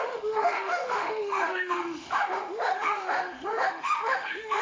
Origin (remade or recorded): remade